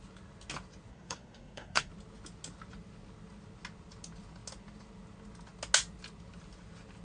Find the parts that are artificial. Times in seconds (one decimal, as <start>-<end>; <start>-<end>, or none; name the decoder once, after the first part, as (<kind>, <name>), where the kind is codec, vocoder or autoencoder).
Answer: 0.9-1.9 (codec, SNAC)